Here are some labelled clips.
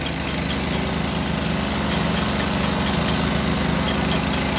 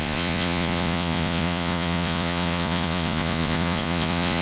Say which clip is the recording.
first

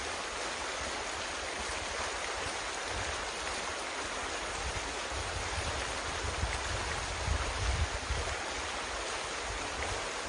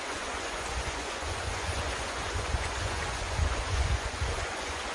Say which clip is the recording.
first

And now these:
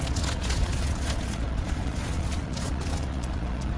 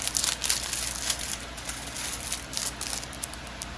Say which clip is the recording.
second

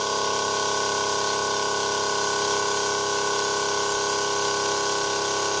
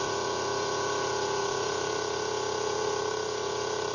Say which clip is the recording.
first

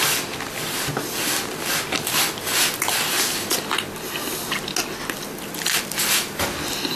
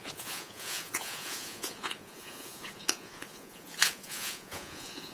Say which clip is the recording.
first